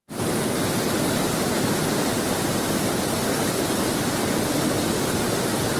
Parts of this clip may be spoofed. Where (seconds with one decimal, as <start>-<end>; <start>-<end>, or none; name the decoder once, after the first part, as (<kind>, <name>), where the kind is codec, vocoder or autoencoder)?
3.5-5.8 (vocoder, BigVGAN v2)